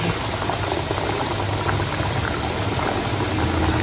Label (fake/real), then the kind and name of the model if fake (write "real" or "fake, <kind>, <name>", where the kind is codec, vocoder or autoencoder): real